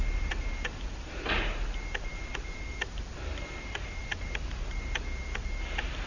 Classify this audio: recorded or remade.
recorded